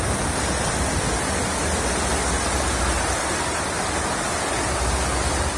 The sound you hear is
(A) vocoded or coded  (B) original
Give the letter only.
B